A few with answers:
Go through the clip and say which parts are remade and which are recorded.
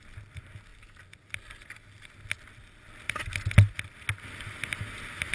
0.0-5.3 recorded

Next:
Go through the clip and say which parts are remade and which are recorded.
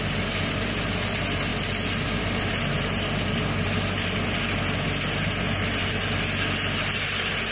0.0-7.5 recorded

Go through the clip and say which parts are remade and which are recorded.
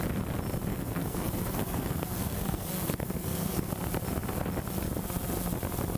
0.0-0.7 recorded; 0.7-3.7 remade; 3.7-6.0 recorded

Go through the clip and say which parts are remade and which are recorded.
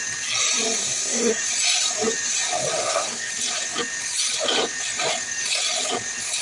0.0-0.8 recorded; 0.8-1.4 remade; 1.4-2.8 recorded; 2.8-3.3 remade; 3.3-6.4 recorded